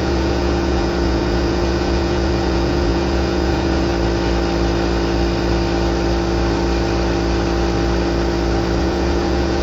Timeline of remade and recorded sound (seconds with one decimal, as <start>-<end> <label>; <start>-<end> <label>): 0.0-3.9 remade; 3.9-8.8 recorded; 8.8-9.6 remade